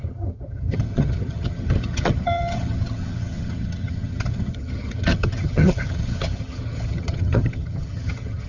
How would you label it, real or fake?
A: fake